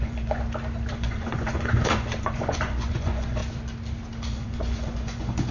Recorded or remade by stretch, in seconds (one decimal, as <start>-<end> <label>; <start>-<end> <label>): 0.0-0.4 remade; 0.4-0.9 recorded; 0.9-3.4 remade; 3.4-4.2 recorded; 4.2-5.5 remade

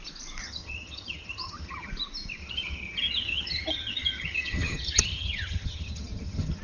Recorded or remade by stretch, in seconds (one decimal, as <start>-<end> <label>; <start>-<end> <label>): 0.0-0.4 recorded; 0.4-1.9 remade; 1.9-2.4 recorded; 2.4-6.6 remade